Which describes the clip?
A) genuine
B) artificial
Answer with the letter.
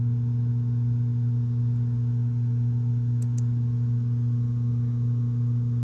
A